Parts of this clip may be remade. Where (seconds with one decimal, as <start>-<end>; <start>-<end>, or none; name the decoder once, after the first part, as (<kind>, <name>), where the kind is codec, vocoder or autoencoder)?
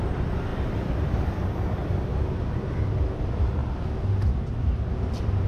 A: 0.5-1.6 (vocoder, BigVGAN v2)